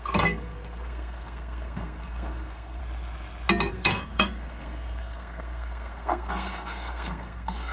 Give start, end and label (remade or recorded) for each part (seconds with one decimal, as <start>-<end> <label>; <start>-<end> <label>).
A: 0.0-2.8 remade; 2.8-3.7 recorded; 3.7-7.7 remade

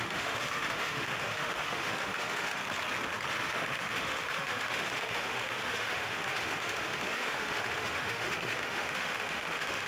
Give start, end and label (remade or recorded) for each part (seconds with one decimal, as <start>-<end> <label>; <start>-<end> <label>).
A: 0.0-2.6 remade; 2.6-3.3 recorded; 3.3-9.9 remade

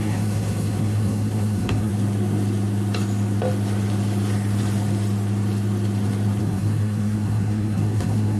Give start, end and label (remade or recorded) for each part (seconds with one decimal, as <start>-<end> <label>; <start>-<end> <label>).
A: 0.0-1.9 remade; 1.9-6.4 recorded; 6.4-8.4 remade

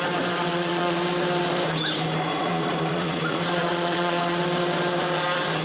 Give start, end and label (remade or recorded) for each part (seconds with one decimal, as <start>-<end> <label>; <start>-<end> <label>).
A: 0.0-0.5 recorded; 0.5-1.0 remade; 1.0-2.3 recorded; 2.3-4.4 remade; 4.4-5.6 recorded

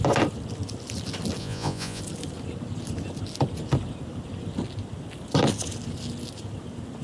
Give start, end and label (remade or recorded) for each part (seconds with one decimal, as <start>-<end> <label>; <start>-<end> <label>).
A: 0.0-1.4 recorded; 1.4-2.0 remade; 2.0-7.0 recorded

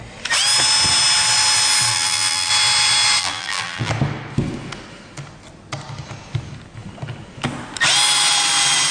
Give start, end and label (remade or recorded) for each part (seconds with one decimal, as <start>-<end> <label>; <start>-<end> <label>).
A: 0.0-1.9 recorded; 1.9-2.5 remade; 2.5-3.2 recorded; 3.2-3.9 remade; 3.9-8.9 recorded

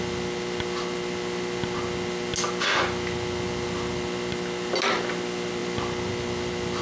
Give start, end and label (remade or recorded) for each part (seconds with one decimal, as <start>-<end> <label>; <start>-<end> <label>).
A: 0.0-6.8 recorded